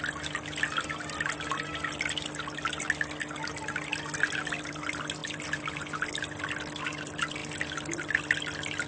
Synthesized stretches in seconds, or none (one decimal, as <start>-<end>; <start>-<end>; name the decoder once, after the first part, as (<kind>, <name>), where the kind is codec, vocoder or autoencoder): none